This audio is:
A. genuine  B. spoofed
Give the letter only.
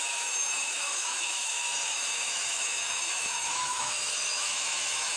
B